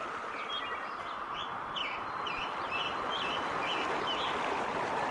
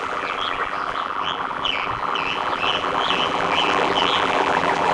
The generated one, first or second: second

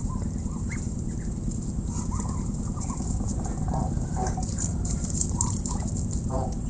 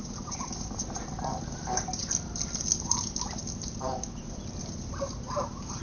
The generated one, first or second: first